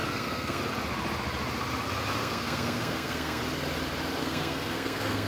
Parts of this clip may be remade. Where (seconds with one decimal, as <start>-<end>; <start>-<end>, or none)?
0.0-0.6; 2.2-3.4; 4.2-5.3